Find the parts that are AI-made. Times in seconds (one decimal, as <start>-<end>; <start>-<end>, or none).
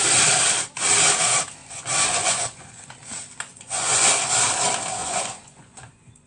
1.6-2.9; 3.5-4.2; 5.0-6.3